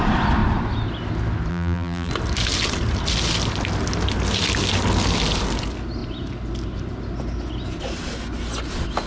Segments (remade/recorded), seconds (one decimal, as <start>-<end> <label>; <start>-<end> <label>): 0.0-1.5 recorded; 1.5-2.1 remade; 2.1-9.1 recorded